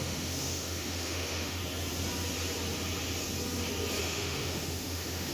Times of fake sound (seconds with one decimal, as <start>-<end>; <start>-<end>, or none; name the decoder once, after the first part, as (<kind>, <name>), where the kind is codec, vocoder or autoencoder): 0.0-1.6 (autoencoder, DAC-VAE); 4.0-5.3